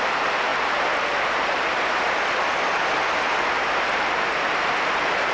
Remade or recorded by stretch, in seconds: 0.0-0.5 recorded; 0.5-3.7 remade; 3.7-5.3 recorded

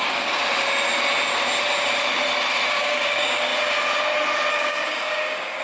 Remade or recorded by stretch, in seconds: 0.0-0.4 remade; 0.4-2.7 recorded; 2.7-3.5 remade; 3.5-4.5 recorded; 4.5-5.6 remade

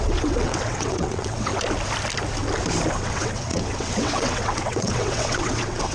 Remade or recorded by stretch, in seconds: 0.0-1.5 remade; 1.5-2.9 recorded; 2.9-5.9 remade

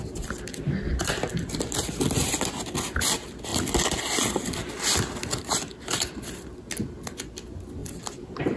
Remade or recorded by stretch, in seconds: 0.0-7.8 recorded; 7.8-8.6 remade